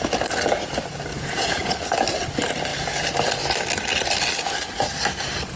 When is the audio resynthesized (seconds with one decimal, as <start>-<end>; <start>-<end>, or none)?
1.1-1.7